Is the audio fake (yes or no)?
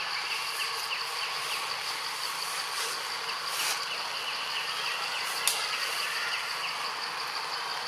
no